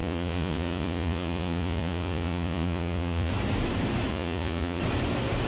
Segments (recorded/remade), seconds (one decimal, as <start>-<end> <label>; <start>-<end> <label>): 0.0-3.3 remade; 3.3-4.1 recorded; 4.1-4.8 remade; 4.8-5.5 recorded